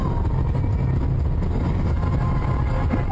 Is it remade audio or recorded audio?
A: recorded